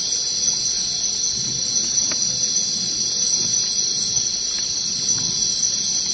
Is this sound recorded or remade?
recorded